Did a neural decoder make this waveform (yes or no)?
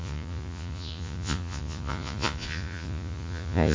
yes